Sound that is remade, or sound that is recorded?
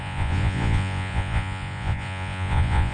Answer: remade